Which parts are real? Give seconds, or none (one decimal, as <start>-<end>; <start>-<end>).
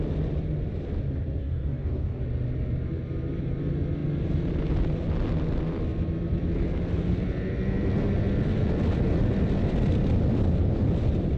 0.0-1.4; 2.2-11.4